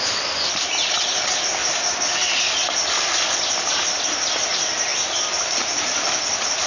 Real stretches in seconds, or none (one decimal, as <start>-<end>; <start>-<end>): 0.0-6.7